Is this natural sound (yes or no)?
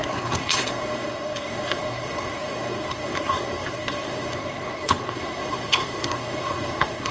no